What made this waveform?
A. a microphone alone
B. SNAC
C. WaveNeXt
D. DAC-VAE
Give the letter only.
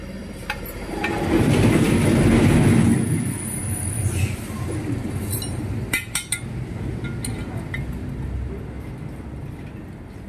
A